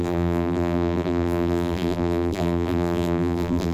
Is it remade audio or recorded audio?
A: remade